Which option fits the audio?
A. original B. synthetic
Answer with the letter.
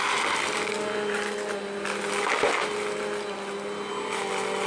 A